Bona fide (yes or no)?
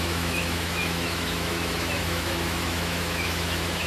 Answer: no